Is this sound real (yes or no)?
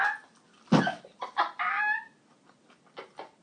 yes